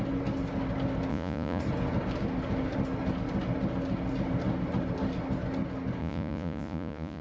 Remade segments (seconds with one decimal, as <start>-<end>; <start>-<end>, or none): 1.1-1.6; 6.0-7.2